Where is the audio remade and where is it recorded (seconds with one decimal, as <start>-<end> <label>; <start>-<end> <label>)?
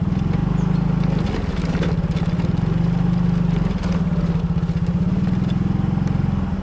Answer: 0.0-6.6 recorded